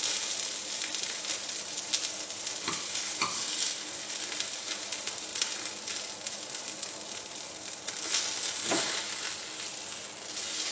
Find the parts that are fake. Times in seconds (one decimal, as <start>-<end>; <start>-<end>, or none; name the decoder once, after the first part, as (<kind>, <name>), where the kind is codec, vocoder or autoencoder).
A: none